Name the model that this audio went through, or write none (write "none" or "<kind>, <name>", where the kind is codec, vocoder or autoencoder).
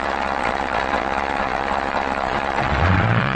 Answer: vocoder, Vocos